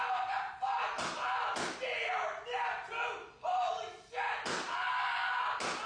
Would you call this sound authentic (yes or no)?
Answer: yes